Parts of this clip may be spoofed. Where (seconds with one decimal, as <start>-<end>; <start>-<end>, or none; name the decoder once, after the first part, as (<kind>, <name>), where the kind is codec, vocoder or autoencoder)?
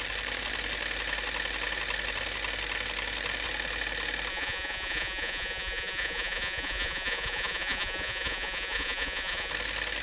4.3-9.5 (vocoder, Vocos)